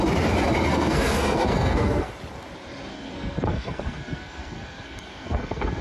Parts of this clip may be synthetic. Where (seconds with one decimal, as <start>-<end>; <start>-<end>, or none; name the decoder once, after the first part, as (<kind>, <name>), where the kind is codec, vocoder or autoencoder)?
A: 0.7-2.1 (codec, SNAC); 2.9-5.8

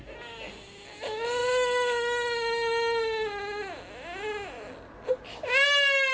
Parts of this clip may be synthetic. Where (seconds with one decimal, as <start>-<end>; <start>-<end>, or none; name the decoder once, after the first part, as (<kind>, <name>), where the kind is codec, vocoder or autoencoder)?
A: none

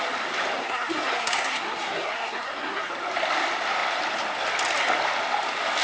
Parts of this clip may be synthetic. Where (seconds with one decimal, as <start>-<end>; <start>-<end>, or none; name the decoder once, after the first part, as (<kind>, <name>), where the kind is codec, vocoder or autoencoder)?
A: 0.6-2.9 (codec, SNAC)

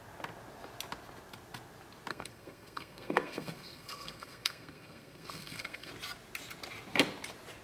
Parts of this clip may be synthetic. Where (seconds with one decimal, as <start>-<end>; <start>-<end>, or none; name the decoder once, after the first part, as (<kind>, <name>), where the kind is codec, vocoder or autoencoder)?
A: 2.1-5.9 (codec, SNAC)

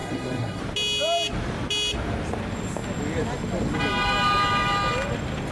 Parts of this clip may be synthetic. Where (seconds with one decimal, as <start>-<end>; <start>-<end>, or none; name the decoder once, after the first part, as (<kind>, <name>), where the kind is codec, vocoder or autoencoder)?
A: 0.0-0.6 (codec, SNAC)

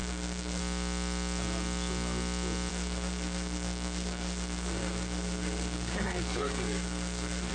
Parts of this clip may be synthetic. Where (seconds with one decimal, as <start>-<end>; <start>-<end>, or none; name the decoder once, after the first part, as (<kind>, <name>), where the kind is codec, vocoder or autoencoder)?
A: 0.0-0.6 (codec, SNAC); 2.7-7.5

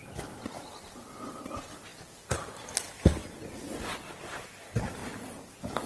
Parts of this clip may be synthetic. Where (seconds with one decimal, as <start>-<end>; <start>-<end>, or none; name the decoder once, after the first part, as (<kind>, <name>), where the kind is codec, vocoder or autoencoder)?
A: none

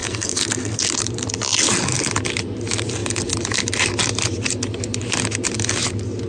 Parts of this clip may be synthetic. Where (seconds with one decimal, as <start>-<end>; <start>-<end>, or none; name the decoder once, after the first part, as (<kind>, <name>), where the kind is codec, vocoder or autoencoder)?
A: 0.0-0.8 (codec, SNAC)